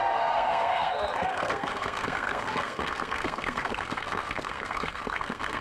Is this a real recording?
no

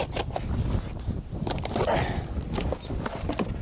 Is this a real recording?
yes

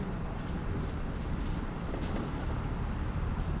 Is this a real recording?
no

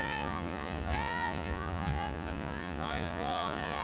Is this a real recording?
no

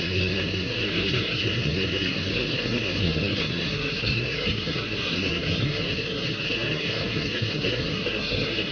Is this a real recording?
no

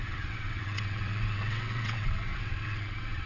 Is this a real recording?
no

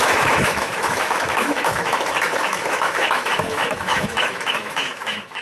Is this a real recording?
no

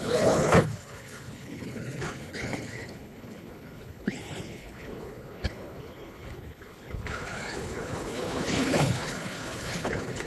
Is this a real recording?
no